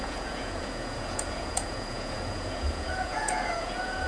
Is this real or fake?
fake